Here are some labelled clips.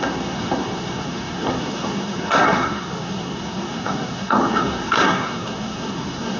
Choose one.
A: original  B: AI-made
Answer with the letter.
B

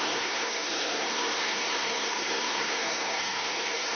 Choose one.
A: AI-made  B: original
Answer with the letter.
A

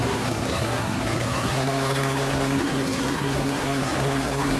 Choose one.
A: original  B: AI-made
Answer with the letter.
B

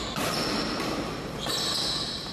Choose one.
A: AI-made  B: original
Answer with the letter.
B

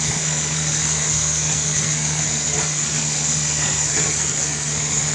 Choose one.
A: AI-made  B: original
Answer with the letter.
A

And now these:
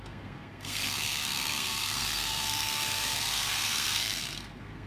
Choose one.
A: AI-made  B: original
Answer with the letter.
A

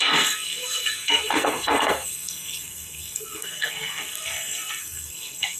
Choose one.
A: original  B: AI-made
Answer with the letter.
B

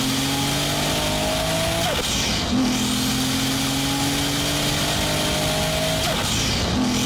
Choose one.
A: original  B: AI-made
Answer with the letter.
A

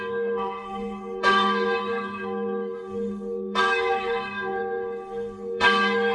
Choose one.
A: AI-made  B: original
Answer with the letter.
A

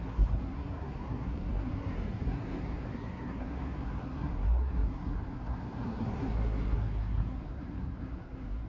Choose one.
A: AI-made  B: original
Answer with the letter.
A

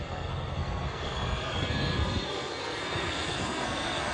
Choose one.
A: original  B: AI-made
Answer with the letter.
B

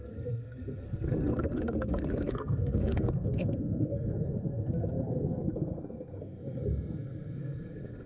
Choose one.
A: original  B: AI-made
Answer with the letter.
B